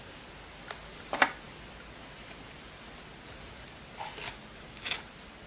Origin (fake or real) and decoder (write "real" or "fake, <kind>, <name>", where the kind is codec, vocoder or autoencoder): real